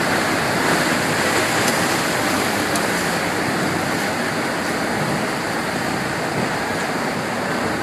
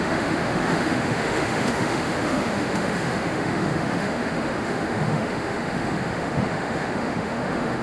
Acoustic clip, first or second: first